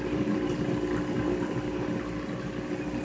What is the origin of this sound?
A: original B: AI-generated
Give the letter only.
B